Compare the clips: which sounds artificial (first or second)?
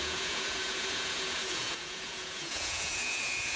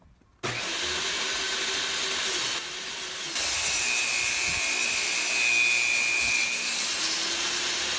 first